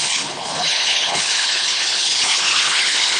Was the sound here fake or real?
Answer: fake